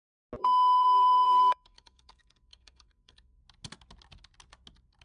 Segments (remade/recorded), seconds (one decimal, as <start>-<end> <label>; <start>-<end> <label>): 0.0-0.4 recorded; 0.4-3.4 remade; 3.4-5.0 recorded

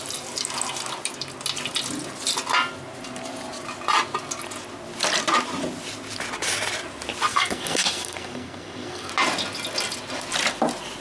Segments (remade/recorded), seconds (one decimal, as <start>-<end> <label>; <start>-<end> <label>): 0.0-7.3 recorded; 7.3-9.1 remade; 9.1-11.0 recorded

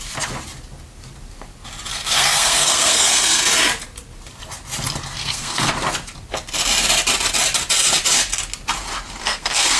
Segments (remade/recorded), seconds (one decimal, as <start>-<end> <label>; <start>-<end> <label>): 0.0-1.9 recorded; 1.9-3.4 remade; 3.4-5.2 recorded; 5.2-5.7 remade; 5.7-9.2 recorded; 9.2-9.8 remade